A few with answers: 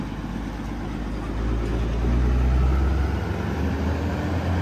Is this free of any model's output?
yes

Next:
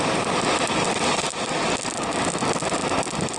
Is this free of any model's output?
yes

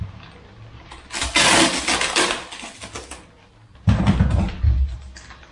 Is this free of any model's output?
yes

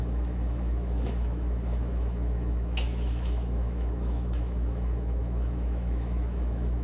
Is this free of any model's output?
no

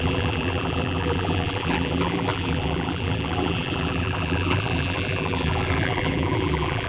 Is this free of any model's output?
no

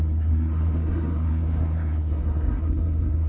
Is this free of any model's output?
no